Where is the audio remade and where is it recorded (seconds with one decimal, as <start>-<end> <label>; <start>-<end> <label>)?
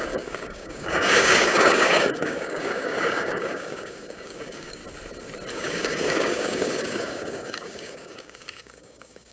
0.0-4.8 remade; 4.8-5.5 recorded; 5.5-9.3 remade